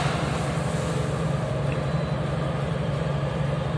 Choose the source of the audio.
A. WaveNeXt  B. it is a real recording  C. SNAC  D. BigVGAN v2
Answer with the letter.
B